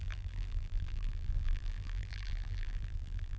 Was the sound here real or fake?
fake